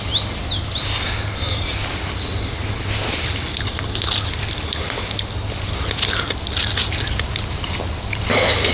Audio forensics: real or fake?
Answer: real